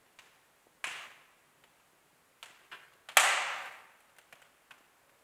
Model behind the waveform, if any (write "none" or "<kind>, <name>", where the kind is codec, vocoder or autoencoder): none